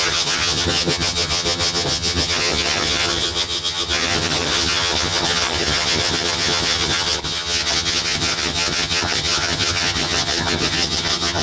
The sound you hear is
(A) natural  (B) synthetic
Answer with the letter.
B